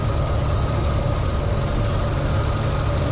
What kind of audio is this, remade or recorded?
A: recorded